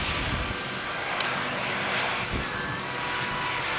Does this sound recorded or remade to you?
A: recorded